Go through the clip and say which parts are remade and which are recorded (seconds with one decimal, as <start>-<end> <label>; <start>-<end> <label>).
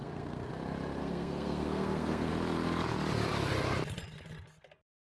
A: 0.0-0.5 remade; 0.5-1.0 recorded; 1.0-2.3 remade; 2.3-5.0 recorded